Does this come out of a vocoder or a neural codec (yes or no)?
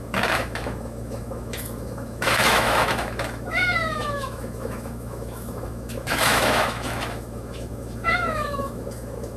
yes